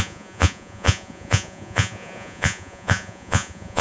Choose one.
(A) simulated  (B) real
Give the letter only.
A